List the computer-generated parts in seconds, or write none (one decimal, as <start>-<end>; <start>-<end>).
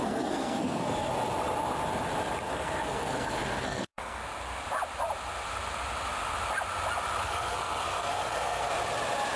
0.0-1.1; 2.5-4.2; 7.2-8.7